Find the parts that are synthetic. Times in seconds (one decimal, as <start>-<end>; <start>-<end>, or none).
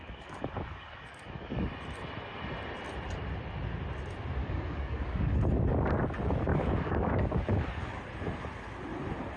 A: 0.0-1.7; 4.4-5.4; 6.5-8.0